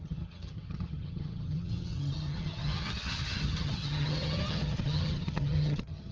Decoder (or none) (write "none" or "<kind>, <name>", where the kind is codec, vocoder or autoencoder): vocoder, HiFi-GAN